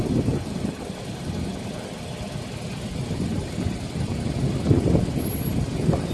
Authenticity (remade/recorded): recorded